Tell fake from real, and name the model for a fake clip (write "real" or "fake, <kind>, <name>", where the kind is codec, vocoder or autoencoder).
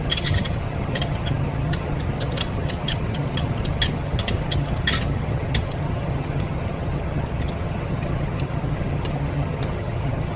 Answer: fake, vocoder, HiFi-GAN